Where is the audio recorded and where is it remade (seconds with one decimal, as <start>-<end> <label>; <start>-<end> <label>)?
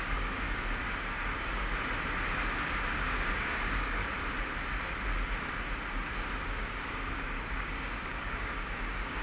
0.0-1.7 remade; 1.7-3.0 recorded; 3.0-4.0 remade; 4.0-6.1 recorded; 6.1-9.2 remade